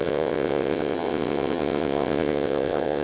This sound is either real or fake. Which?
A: fake